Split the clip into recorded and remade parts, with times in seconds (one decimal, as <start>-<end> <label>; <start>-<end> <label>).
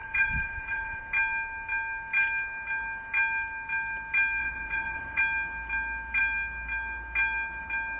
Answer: 0.0-1.0 remade; 1.0-4.4 recorded; 4.4-5.2 remade; 5.2-8.0 recorded